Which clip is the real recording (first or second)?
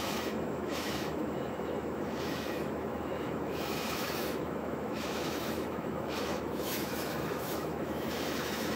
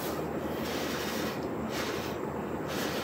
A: second